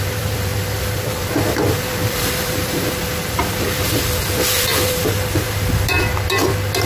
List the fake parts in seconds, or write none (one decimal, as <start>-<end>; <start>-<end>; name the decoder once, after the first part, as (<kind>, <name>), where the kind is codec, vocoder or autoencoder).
0.5-1.1 (vocoder, BigVGAN v2); 2.0-2.7